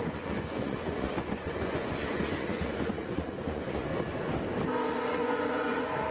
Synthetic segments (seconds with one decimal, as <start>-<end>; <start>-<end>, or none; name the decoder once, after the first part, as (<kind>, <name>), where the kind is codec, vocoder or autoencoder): 0.0-3.9 (vocoder, Vocos); 4.9-6.1